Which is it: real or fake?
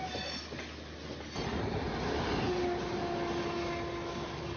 real